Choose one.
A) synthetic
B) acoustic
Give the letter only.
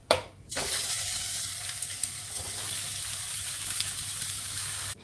A